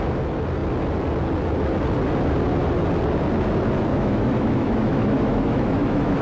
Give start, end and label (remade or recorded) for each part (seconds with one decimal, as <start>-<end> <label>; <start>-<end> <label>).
0.0-3.9 recorded; 3.9-6.2 remade